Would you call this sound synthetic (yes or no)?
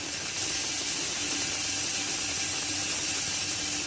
no